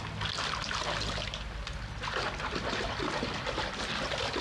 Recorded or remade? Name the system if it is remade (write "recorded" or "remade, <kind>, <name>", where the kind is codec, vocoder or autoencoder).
recorded